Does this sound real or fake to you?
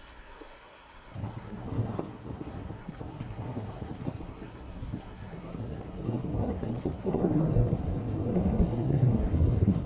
fake